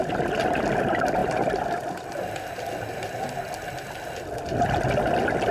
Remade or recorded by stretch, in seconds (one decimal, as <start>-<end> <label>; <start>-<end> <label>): 0.0-5.5 recorded